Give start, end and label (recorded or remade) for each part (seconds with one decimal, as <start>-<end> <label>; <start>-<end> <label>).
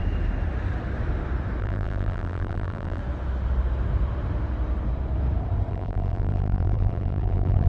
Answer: 0.0-1.6 recorded; 1.6-3.0 remade; 3.0-5.7 recorded; 5.7-7.7 remade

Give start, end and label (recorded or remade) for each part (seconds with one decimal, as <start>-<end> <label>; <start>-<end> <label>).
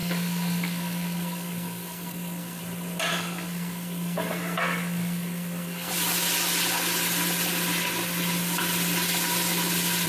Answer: 0.0-2.6 remade; 2.6-3.1 recorded; 3.1-5.9 remade; 5.9-10.1 recorded